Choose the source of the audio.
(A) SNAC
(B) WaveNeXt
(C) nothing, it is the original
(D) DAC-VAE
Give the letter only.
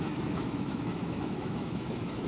D